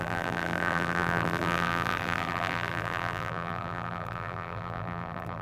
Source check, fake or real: fake